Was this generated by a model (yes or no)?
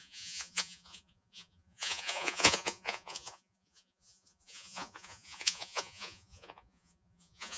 yes